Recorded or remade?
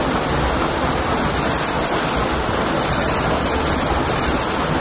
recorded